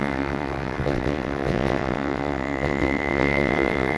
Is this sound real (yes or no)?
no